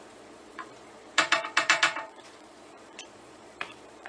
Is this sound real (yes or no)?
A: no